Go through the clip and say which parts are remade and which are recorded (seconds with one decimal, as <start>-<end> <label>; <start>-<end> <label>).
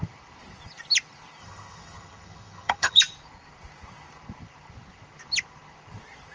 0.0-1.4 recorded; 1.4-3.0 remade; 3.0-6.3 recorded